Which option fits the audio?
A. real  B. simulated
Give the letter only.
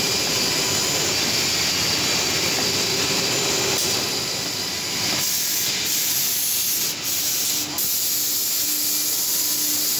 A